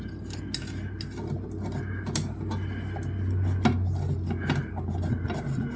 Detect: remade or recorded recorded